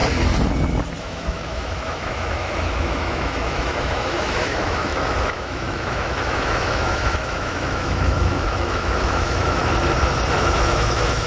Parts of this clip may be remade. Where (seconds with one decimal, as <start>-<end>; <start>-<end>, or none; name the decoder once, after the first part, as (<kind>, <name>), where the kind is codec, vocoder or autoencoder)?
1.0-9.6 (autoencoder, DAC-VAE); 10.4-11.3